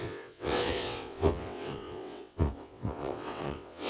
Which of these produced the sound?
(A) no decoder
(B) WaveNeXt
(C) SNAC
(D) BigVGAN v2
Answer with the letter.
B